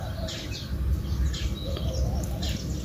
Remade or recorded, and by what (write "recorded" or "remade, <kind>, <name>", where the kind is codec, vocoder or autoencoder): recorded